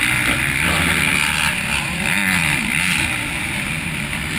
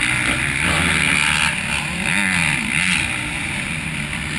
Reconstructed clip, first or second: first